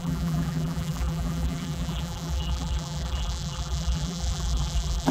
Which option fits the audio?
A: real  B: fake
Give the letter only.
B